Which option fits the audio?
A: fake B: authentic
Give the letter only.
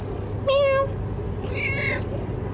B